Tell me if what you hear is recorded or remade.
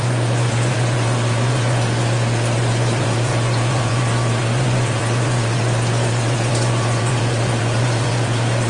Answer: remade